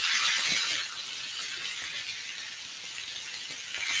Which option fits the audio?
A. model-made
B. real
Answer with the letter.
B